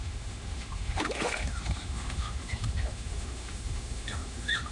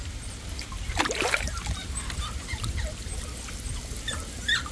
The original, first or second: second